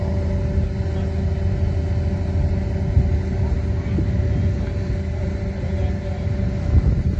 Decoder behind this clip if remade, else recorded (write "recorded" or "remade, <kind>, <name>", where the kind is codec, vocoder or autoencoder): recorded